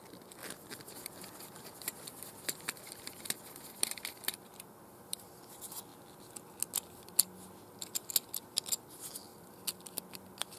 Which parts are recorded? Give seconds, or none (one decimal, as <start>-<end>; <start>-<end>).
0.0-0.4; 5.4-9.3; 10.0-10.6